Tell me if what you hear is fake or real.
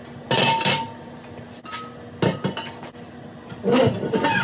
real